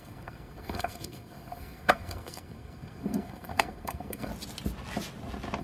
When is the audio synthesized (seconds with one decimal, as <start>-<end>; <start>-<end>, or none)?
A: 0.0-4.3